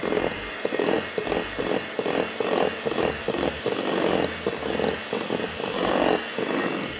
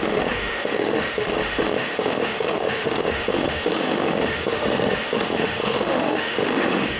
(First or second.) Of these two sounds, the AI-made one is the second